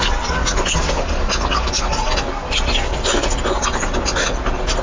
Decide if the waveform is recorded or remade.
recorded